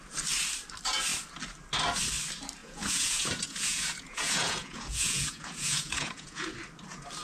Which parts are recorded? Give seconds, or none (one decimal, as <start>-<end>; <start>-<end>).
0.0-2.6; 6.5-7.2